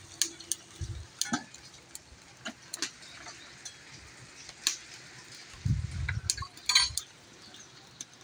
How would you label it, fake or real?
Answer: real